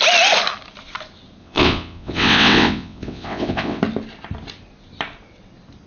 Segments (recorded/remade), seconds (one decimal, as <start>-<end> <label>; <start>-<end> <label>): 0.0-1.4 recorded; 1.4-3.8 remade; 3.8-5.9 recorded

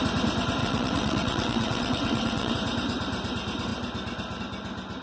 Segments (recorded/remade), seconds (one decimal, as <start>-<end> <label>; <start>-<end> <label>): 0.0-0.6 recorded; 0.6-2.5 remade; 2.5-5.0 recorded

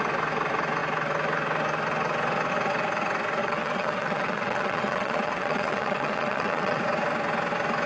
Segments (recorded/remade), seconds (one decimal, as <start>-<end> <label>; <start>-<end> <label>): 0.0-3.4 recorded; 3.4-6.8 remade; 6.8-7.9 recorded

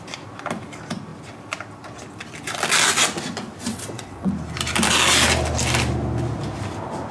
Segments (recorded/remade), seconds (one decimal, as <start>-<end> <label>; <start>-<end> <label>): 0.0-3.7 recorded; 3.7-4.3 remade; 4.3-7.1 recorded